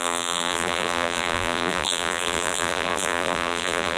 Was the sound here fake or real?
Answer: fake